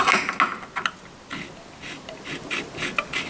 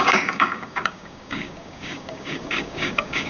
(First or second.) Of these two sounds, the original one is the first